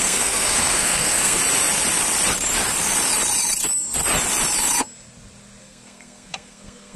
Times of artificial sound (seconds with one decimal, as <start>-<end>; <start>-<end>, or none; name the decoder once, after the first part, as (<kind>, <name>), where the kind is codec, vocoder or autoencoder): 0.0-1.4 (codec, SNAC); 5.6-7.0